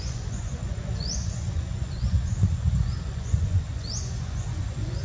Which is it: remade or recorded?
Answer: remade